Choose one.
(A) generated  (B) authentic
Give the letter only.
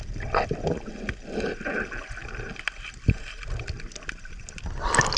B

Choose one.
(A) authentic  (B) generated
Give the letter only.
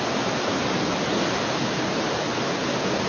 A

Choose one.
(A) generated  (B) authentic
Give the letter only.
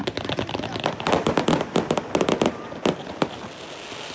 B